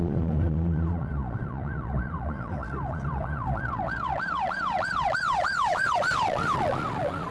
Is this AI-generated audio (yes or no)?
yes